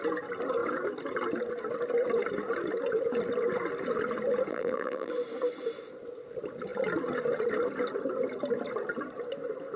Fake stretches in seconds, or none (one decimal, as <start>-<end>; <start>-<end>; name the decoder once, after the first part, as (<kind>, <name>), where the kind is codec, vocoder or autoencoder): 4.5-5.1 (vocoder, BigVGAN v2)